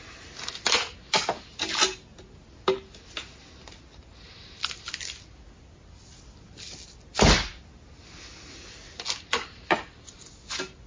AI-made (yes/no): no